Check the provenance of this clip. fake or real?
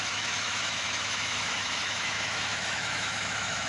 fake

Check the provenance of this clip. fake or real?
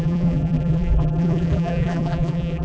fake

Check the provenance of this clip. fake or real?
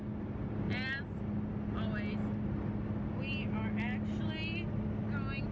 real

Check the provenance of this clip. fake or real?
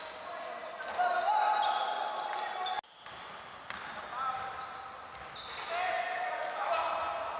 real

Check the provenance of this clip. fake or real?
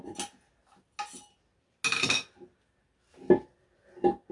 real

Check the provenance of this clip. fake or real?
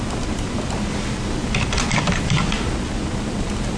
real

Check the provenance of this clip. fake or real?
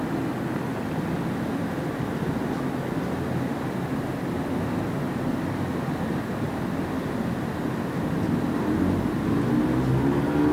real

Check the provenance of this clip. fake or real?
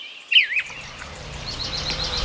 real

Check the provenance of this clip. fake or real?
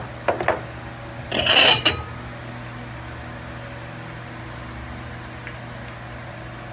real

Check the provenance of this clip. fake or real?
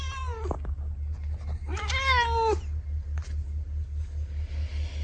real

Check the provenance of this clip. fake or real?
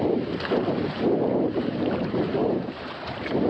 fake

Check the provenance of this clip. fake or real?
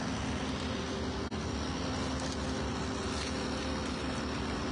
real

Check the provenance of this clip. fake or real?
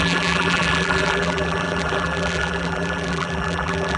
fake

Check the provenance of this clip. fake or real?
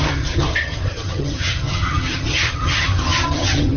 fake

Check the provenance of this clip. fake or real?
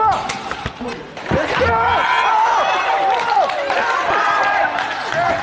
real